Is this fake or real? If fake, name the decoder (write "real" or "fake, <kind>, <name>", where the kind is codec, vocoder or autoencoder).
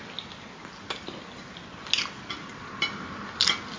real